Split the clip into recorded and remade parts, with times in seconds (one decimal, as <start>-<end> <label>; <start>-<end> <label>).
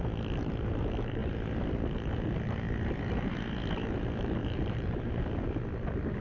0.0-4.4 recorded; 4.4-5.2 remade; 5.2-6.2 recorded